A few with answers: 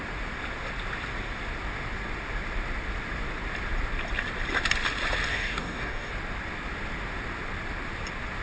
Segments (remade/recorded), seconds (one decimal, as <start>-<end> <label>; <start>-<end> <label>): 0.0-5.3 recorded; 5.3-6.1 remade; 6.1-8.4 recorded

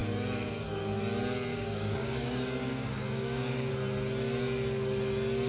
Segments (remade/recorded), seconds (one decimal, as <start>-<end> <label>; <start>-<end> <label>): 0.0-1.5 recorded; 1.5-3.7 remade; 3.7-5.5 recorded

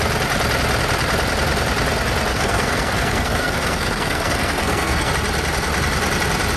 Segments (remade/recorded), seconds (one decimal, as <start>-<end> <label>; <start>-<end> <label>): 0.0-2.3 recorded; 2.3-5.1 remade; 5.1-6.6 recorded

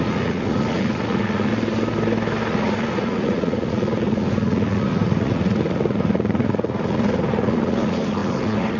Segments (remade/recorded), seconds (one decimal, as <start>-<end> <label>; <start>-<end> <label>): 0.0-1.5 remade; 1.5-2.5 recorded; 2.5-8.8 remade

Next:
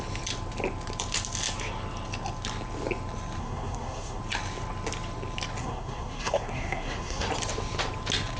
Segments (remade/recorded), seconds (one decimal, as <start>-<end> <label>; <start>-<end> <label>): 0.0-3.4 recorded; 3.4-4.2 remade; 4.2-5.6 recorded; 5.6-7.3 remade; 7.3-8.4 recorded

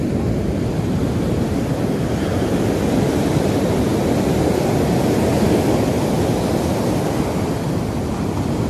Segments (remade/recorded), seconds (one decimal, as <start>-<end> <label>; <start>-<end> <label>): 0.0-8.7 recorded